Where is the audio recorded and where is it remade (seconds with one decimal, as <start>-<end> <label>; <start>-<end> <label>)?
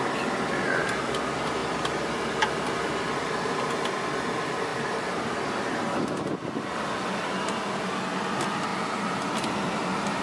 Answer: 0.0-4.7 recorded; 4.7-5.6 remade; 5.6-10.2 recorded